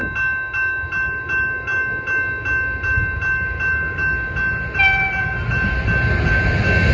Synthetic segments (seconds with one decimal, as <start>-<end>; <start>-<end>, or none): none